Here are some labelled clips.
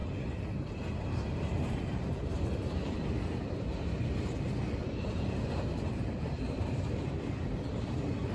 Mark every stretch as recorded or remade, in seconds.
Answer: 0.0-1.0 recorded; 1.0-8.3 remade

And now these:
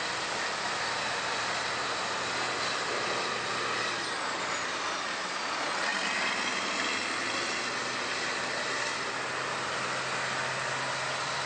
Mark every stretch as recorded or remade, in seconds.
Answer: 0.0-11.5 recorded

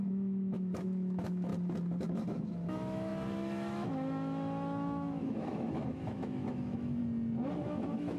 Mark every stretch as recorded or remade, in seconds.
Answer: 0.0-1.5 remade; 1.5-2.1 recorded; 2.1-7.0 remade; 7.0-7.6 recorded; 7.6-8.2 remade

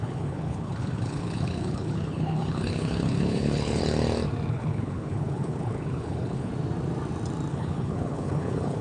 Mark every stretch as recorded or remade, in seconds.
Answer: 0.0-3.8 remade; 3.8-4.5 recorded; 4.5-6.5 remade; 6.5-7.5 recorded; 7.5-8.8 remade

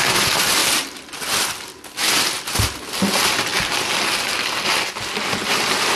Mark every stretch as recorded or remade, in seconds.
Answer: 0.0-6.0 recorded